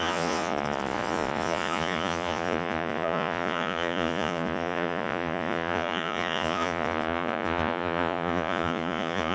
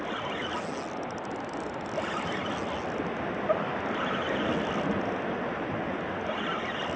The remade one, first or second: first